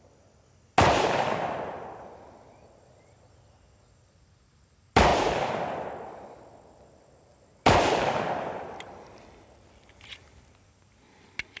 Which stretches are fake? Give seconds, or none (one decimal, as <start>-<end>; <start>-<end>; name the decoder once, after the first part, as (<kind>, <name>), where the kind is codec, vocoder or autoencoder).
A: none